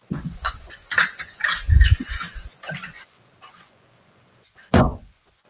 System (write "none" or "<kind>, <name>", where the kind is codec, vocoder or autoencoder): vocoder, Vocos